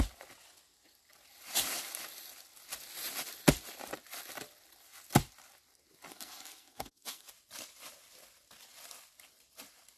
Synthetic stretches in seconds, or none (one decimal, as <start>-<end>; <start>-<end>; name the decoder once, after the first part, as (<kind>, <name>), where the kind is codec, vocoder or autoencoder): 6.1-7.3 (codec, SNAC)